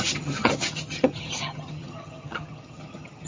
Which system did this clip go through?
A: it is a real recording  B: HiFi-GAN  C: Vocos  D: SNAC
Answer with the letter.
B